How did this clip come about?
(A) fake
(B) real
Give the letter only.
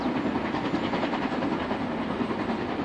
B